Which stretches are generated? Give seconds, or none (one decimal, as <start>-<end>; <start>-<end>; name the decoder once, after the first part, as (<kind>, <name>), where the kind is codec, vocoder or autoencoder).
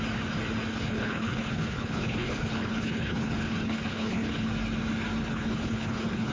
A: 0.7-4.5 (codec, HILCodec); 5.2-6.3